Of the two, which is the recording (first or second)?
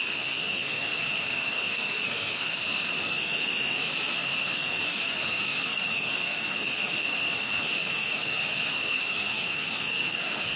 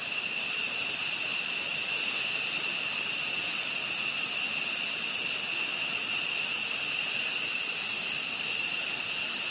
second